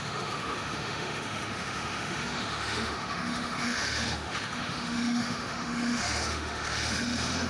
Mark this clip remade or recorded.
remade